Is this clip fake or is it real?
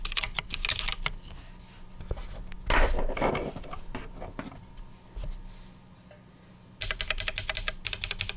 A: real